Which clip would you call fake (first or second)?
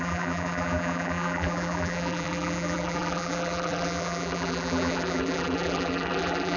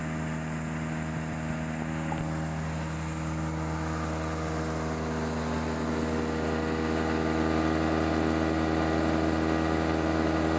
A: first